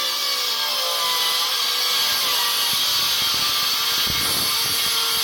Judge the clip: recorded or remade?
recorded